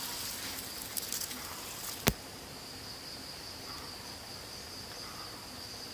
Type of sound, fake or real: real